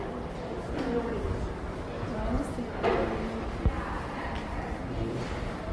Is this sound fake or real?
real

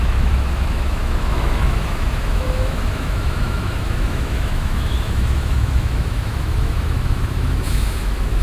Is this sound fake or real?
fake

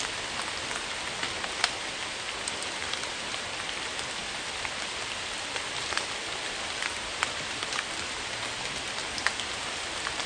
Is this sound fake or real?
fake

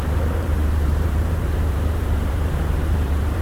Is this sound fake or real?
fake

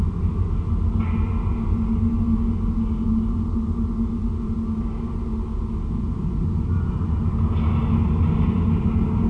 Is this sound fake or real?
real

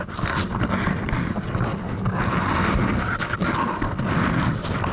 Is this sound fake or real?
real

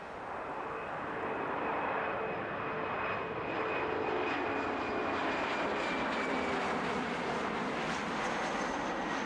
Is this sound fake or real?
real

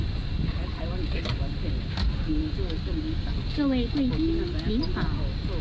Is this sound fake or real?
real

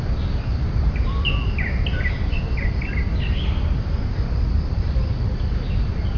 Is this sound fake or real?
real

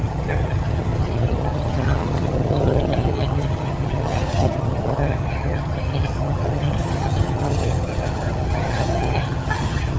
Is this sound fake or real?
fake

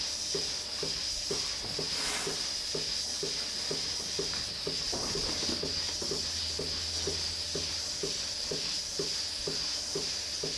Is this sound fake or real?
real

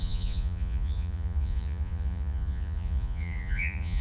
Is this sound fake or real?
fake